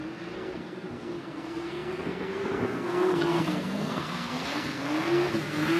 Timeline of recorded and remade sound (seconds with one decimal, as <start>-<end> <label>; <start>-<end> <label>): 0.0-5.8 remade